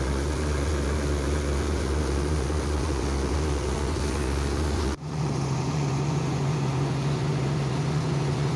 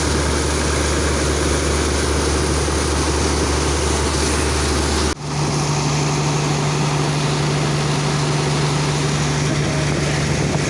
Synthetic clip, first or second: first